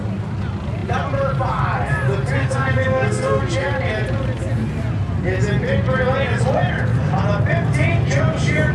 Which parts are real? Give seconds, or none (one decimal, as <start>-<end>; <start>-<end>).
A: 0.0-2.4; 3.4-8.7